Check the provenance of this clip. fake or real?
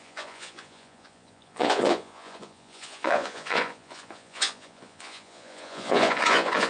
fake